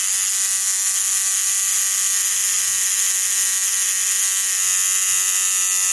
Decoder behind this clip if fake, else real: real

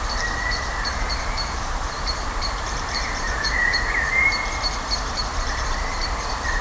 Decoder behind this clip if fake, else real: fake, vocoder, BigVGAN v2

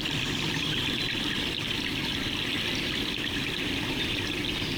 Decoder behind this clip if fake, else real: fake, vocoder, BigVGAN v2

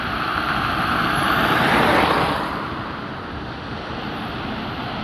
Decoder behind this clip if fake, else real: real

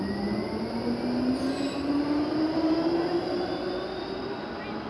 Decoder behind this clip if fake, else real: real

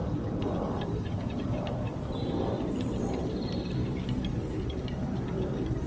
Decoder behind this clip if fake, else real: fake, vocoder, BigVGAN v2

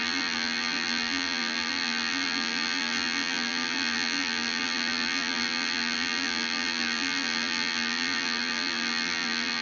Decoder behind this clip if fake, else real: fake, vocoder, BigVGAN v2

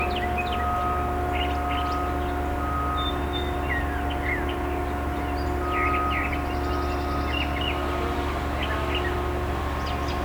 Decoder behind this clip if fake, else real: real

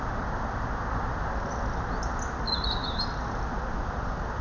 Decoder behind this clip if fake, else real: real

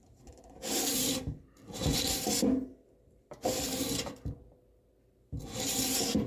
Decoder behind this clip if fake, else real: real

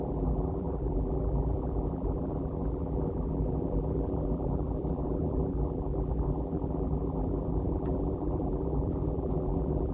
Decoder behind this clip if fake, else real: fake, vocoder, BigVGAN v2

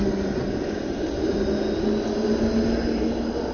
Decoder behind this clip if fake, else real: real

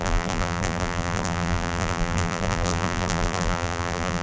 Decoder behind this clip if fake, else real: fake, vocoder, BigVGAN v2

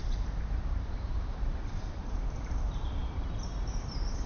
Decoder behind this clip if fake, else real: fake, vocoder, BigVGAN v2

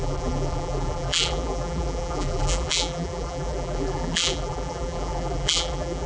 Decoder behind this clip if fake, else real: fake, vocoder, BigVGAN v2